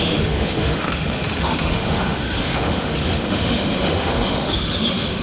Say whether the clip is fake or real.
fake